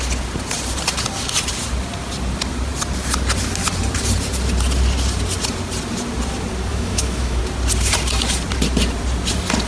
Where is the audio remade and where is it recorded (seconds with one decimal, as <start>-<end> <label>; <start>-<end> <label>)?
0.0-6.7 recorded; 6.7-7.4 remade; 7.4-9.7 recorded